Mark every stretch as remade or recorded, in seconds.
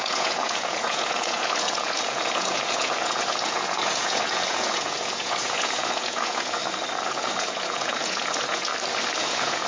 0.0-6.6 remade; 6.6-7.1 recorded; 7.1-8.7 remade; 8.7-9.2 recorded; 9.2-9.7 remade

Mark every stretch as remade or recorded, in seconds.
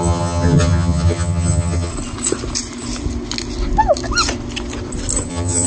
0.0-1.9 remade; 1.9-5.3 recorded; 5.3-5.7 remade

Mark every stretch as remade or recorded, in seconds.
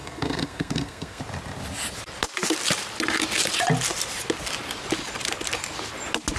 0.0-1.2 remade; 1.2-6.4 recorded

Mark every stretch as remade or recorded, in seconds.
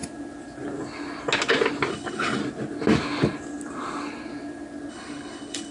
0.0-1.9 recorded; 1.9-2.4 remade; 2.4-4.9 recorded; 4.9-5.7 remade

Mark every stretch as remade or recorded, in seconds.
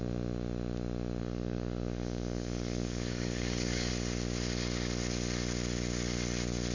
0.0-1.2 recorded; 1.2-3.9 remade; 3.9-6.7 recorded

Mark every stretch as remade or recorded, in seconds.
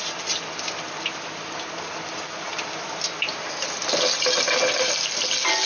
0.0-5.7 recorded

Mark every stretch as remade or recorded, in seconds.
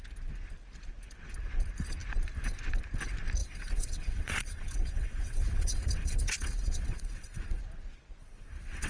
0.0-3.4 recorded; 3.4-7.6 remade; 7.6-8.2 recorded; 8.2-8.9 remade